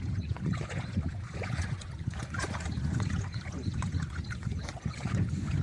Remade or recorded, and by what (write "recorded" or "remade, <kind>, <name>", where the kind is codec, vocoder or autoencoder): remade, vocoder, Vocos